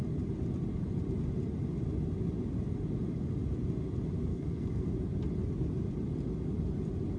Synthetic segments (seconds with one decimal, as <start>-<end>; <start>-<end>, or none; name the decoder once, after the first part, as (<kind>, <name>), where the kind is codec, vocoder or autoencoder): 4.3-4.9 (codec, SNAC)